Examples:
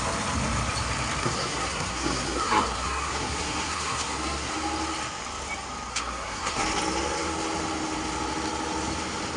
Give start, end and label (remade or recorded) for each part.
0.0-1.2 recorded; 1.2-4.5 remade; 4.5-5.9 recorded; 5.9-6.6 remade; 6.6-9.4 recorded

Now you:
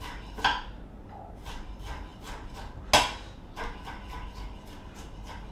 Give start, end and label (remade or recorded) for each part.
0.0-5.5 recorded

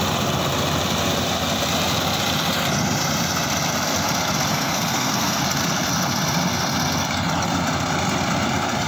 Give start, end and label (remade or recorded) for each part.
0.0-4.5 recorded; 4.5-5.4 remade; 5.4-8.9 recorded

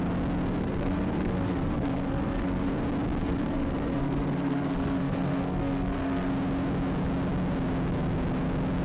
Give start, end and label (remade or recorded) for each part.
0.0-0.6 recorded; 0.6-2.7 remade; 2.7-3.2 recorded; 3.2-6.3 remade; 6.3-8.8 recorded

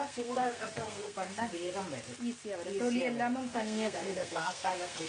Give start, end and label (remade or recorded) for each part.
0.0-1.7 remade; 1.7-3.5 recorded; 3.5-5.1 remade

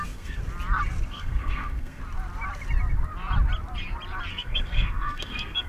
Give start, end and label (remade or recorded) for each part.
0.0-0.4 remade; 0.4-1.1 recorded; 1.1-2.0 remade; 2.0-4.3 recorded; 4.3-5.7 remade

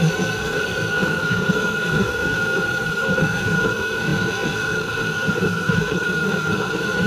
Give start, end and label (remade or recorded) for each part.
0.0-7.1 remade